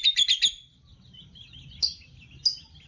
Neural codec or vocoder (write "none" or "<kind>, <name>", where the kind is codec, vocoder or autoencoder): none